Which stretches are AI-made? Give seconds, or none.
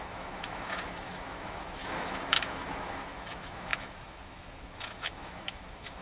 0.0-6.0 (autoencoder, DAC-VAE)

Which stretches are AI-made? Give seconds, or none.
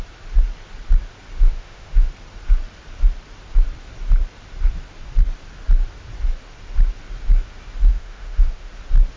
1.5-2.1 (autoencoder, DAC-VAE); 7.9-8.7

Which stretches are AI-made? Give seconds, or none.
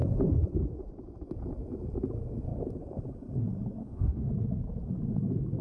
3.8-4.3 (autoencoder, DAC-VAE)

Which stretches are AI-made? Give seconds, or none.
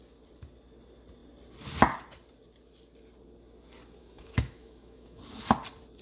4.0-5.2 (autoencoder, DAC-VAE)